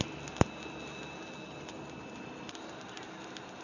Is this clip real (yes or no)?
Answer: yes